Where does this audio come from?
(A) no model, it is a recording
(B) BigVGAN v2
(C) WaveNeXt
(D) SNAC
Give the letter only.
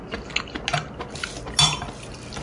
A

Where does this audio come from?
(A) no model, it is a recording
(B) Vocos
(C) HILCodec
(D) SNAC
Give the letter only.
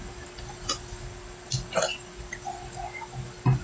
A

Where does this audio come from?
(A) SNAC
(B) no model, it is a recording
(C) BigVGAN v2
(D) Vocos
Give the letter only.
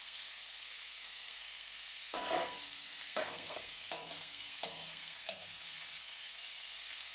A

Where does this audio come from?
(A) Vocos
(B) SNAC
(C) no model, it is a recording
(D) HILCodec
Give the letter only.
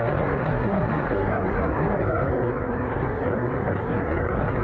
B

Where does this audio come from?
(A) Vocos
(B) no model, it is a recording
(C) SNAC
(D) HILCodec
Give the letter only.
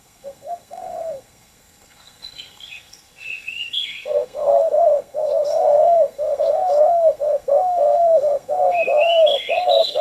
C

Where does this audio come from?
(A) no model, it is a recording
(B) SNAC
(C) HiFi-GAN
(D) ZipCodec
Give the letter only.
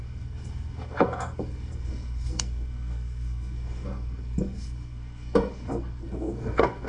B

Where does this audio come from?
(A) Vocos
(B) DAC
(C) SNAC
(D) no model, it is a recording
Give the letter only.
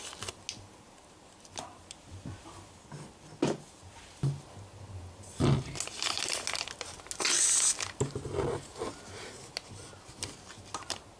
D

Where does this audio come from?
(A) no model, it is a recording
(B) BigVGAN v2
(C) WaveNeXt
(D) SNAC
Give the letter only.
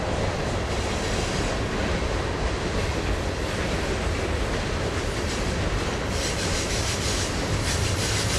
A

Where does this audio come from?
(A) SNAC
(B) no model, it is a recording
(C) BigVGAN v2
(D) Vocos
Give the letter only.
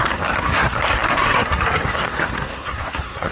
A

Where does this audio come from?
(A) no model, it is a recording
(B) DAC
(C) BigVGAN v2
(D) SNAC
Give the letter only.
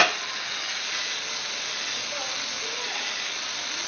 A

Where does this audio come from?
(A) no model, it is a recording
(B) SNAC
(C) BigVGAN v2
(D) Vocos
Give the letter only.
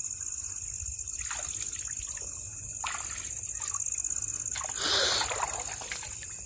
A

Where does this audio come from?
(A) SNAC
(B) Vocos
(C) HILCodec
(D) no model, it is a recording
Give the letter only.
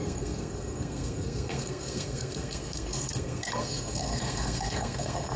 A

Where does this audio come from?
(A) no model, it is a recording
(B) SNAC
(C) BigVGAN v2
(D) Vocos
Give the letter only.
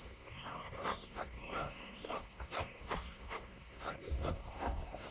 B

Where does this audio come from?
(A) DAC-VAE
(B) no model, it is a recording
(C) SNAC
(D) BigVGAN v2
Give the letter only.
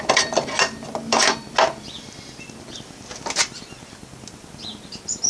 B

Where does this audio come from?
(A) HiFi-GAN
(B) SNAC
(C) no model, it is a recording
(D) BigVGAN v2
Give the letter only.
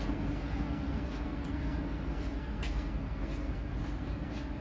B